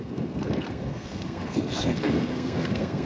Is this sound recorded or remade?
remade